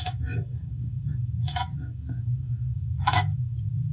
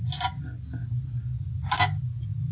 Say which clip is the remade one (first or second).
first